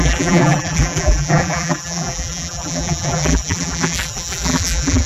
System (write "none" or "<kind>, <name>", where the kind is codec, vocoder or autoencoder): vocoder, BigVGAN v2